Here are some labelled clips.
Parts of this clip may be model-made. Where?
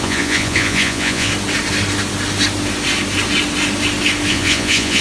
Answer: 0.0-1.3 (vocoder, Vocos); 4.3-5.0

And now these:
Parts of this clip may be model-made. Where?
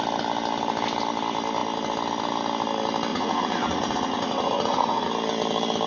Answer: 3.1-5.1 (vocoder, Vocos)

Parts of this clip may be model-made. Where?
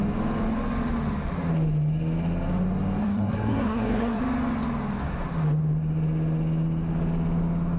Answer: 3.0-4.2 (codec, SNAC)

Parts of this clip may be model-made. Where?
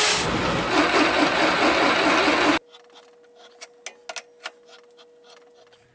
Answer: none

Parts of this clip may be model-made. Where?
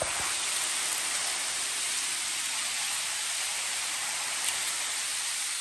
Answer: none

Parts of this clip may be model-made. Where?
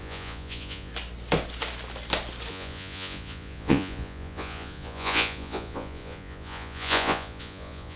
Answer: 0.0-0.9 (vocoder, Vocos); 2.5-8.0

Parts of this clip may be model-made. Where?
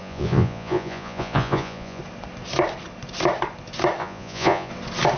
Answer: 0.0-2.0 (vocoder, Vocos); 4.0-4.7